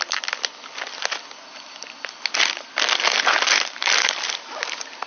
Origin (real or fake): real